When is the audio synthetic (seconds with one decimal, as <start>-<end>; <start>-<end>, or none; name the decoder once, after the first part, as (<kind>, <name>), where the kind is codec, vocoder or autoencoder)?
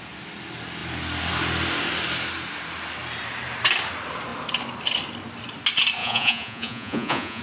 6.0-7.4 (vocoder, Vocos)